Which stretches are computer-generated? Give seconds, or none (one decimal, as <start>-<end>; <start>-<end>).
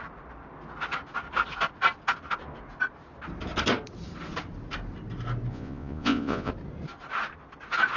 5.5-6.5